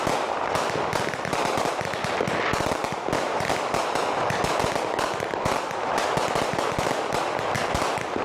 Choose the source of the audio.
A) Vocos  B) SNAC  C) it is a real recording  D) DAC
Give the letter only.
C